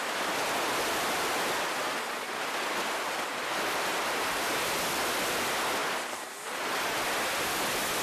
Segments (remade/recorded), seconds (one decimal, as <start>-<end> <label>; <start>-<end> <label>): 0.0-8.0 recorded